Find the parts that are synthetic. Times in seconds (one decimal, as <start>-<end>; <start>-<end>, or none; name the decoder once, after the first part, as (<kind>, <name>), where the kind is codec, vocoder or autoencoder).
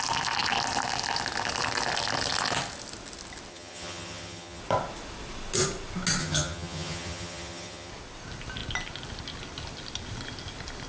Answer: 3.5-4.6 (vocoder, HiFi-GAN); 6.2-7.9